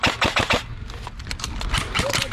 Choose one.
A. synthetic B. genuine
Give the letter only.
B